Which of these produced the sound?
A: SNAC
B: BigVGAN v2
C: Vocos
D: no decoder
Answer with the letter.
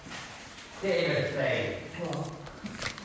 B